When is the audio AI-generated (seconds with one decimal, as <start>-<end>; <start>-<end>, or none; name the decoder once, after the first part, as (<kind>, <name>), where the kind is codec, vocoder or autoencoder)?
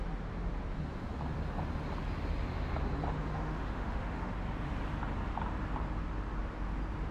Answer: 3.3-4.3 (autoencoder, DAC-VAE)